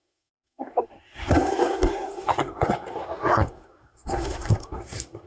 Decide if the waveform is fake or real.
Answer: fake